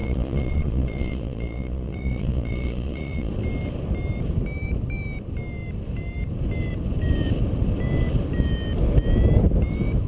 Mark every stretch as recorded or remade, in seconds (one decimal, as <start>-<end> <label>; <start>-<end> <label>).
0.0-3.3 remade; 3.3-10.1 recorded